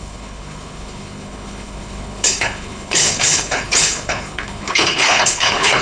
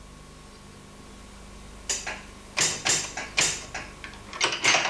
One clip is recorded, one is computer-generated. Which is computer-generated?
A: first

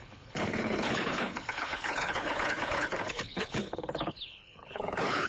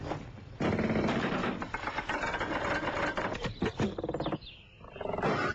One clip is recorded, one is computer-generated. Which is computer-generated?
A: first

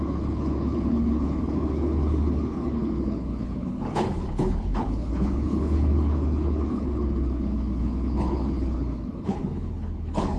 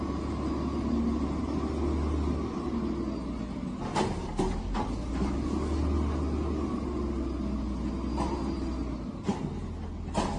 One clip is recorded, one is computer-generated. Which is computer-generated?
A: first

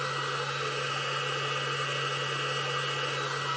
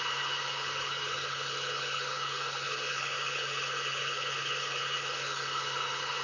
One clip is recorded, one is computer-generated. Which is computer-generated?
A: second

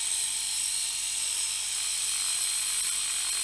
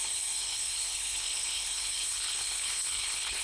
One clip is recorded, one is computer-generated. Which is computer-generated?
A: second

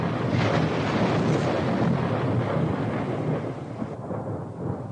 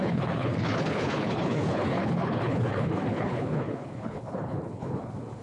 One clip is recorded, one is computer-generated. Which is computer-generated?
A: second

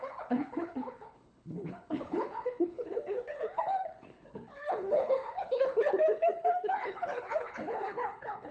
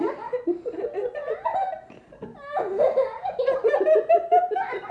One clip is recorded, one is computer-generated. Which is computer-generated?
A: first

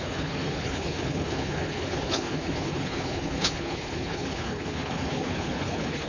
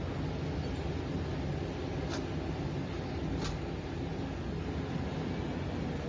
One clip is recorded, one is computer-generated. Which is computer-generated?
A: first